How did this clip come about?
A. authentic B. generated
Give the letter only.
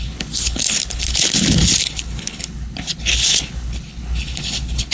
B